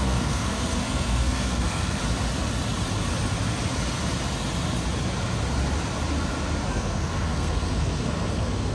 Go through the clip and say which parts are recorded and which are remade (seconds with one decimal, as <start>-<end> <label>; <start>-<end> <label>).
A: 0.0-2.0 remade; 2.0-6.7 recorded; 6.7-8.7 remade

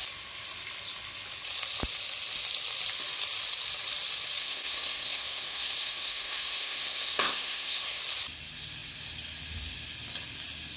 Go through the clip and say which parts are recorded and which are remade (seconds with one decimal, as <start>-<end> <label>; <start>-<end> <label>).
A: 0.0-4.4 recorded; 4.4-8.0 remade; 8.0-10.8 recorded